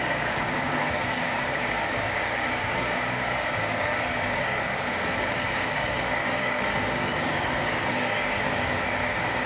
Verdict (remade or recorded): remade